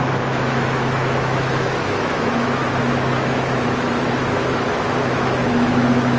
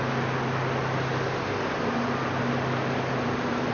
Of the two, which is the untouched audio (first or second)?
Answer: second